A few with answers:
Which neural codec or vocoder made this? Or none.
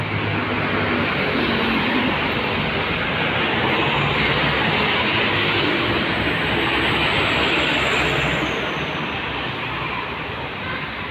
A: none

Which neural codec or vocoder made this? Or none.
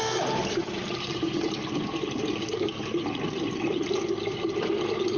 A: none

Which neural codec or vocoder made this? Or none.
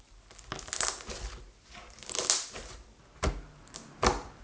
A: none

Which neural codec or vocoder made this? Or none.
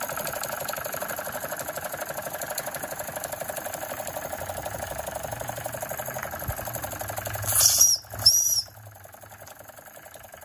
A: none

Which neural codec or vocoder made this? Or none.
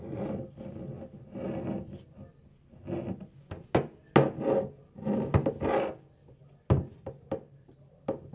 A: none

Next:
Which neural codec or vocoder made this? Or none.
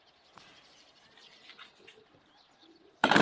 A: vocoder, BigVGAN v2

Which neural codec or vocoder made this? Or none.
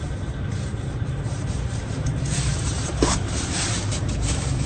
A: vocoder, BigVGAN v2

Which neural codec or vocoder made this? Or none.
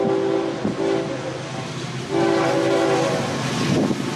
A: none